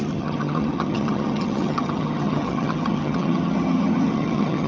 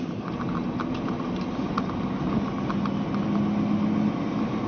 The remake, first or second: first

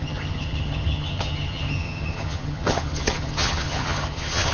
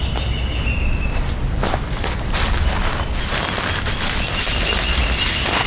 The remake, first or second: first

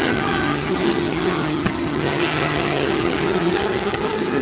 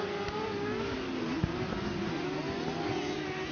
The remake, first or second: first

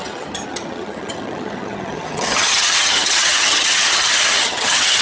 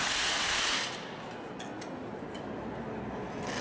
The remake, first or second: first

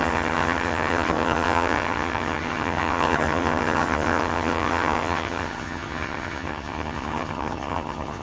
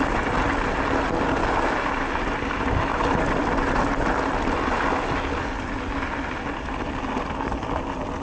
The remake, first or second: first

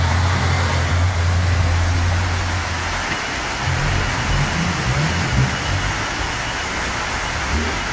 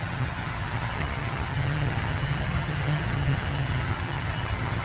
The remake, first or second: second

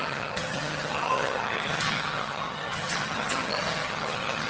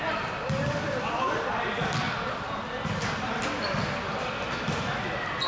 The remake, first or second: first